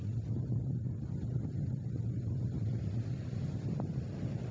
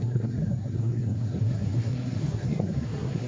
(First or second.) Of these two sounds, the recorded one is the first